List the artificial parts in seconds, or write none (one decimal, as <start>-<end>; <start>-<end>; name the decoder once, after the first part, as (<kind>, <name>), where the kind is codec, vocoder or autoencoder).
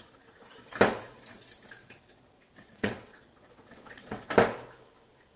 1.8-4.3 (vocoder, WaveNeXt)